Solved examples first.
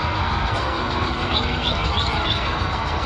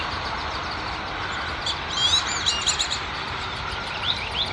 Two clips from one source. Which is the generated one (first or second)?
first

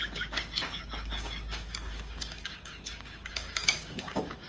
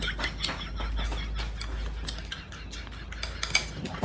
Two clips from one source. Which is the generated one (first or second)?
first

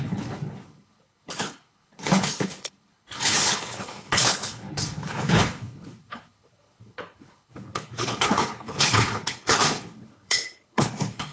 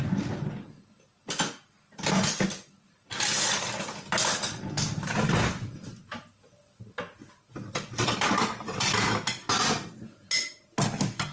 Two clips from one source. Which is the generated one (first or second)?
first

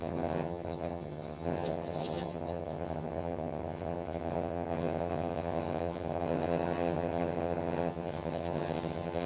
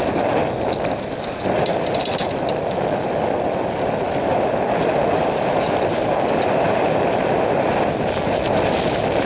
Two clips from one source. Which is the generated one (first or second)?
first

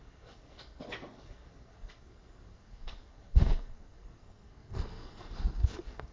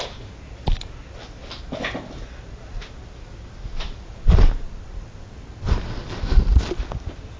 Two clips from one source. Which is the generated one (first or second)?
first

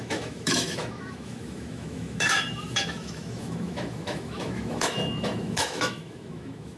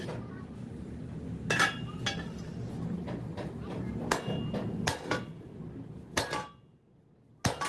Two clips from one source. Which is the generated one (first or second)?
first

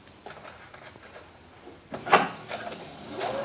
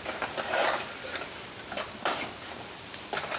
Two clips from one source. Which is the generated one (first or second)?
second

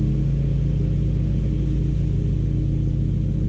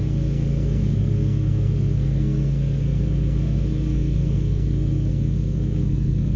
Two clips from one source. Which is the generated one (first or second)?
second